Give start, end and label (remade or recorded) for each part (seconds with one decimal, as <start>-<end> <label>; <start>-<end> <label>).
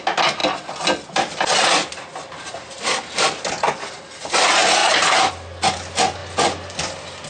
0.0-4.8 recorded; 4.8-5.3 remade; 5.3-7.3 recorded